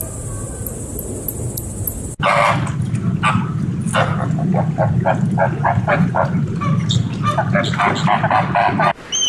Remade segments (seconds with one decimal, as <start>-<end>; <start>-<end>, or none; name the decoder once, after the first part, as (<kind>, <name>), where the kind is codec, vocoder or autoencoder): 5.6-6.1 (vocoder, Vocos)